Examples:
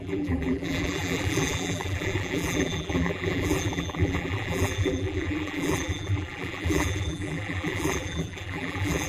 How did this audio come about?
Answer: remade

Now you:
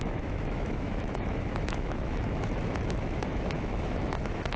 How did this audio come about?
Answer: remade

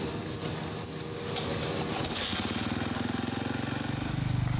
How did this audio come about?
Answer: recorded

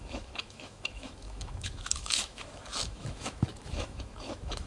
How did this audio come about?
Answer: remade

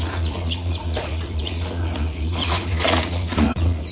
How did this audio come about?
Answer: remade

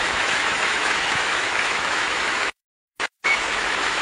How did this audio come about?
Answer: remade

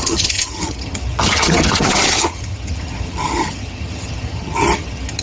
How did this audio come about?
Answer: remade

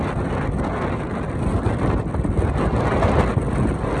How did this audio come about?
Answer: recorded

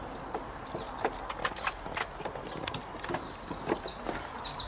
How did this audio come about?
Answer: recorded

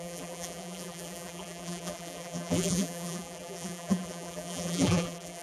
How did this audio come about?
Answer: remade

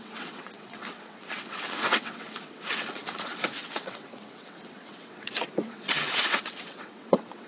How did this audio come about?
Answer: remade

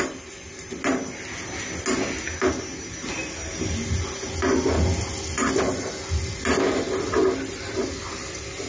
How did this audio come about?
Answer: recorded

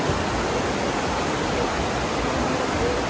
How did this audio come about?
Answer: recorded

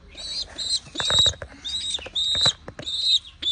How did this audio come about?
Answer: recorded